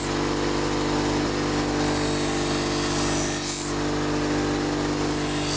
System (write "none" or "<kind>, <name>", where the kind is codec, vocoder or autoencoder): none